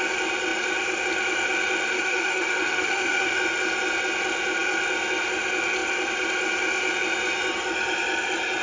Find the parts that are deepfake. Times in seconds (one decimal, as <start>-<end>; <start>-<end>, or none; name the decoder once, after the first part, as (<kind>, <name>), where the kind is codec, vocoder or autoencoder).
1.9-3.4 (autoencoder, DAC-VAE)